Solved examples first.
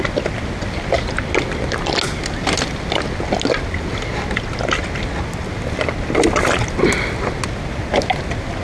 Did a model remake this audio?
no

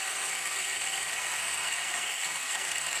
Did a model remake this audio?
yes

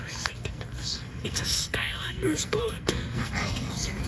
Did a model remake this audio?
yes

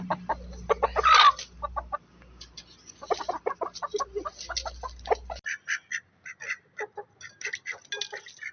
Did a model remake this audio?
no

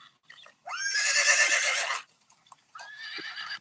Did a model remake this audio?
no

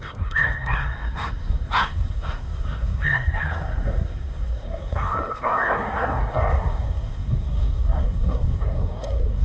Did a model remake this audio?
yes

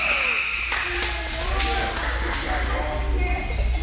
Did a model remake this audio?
no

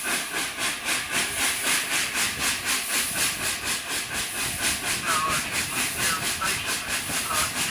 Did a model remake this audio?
no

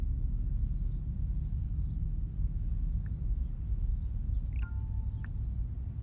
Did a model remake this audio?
no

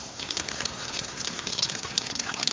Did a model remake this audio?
yes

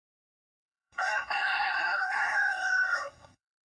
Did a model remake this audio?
yes